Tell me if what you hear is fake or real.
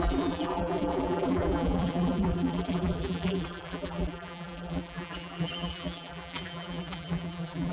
fake